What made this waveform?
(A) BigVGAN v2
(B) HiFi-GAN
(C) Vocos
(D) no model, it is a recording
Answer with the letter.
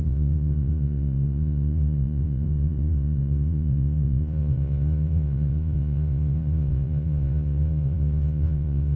C